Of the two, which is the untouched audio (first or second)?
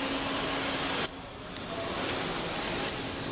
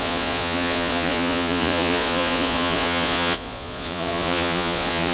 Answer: first